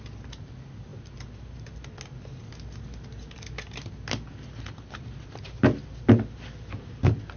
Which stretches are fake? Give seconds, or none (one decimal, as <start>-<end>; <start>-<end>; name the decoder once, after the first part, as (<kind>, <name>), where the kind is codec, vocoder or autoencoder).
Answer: none